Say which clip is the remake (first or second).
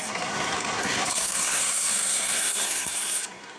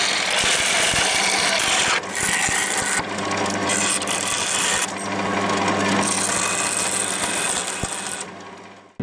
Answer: first